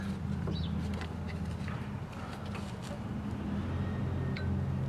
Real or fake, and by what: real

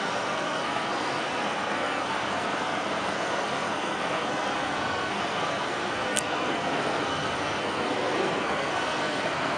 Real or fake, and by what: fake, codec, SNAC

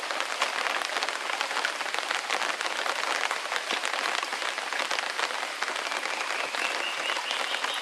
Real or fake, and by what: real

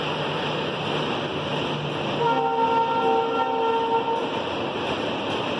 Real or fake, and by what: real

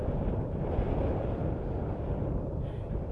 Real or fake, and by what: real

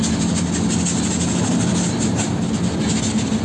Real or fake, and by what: real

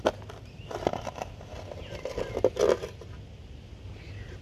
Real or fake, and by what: real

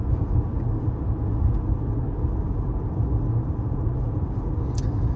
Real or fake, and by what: real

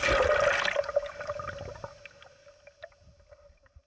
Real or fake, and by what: real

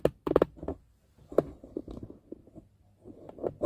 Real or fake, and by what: real